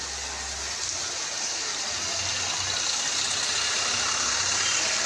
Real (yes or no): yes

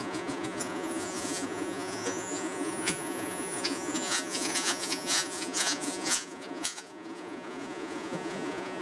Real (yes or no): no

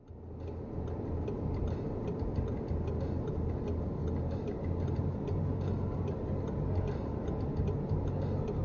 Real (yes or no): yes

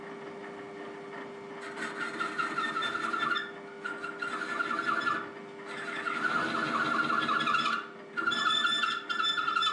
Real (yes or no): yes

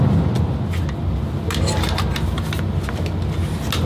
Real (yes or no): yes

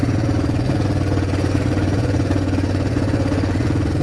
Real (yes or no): no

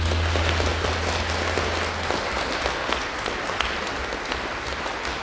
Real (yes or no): yes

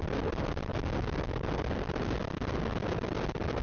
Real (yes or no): yes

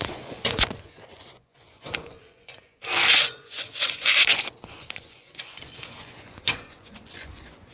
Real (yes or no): no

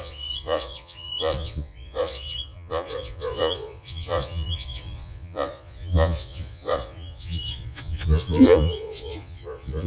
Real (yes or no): no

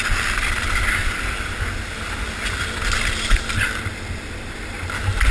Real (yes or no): yes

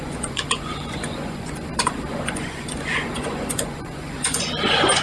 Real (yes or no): no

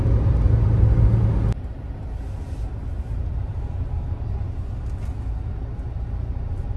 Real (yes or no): yes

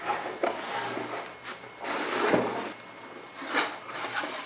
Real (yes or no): yes